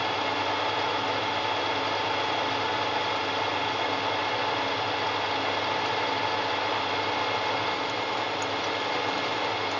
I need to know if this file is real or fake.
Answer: real